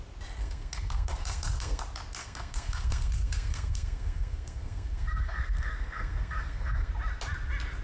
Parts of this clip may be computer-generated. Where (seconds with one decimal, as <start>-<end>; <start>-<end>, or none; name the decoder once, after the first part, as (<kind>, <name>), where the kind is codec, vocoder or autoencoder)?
0.4-1.8 (codec, SNAC); 2.2-6.9